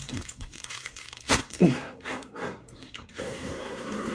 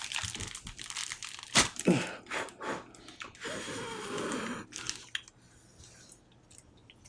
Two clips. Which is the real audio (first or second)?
second